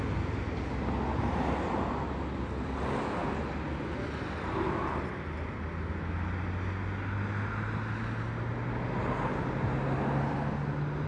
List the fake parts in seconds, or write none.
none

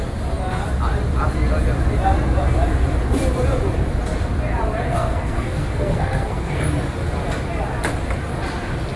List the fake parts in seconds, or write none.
4.9-6.6 (codec, SNAC)